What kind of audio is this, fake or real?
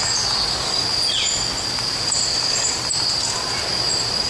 real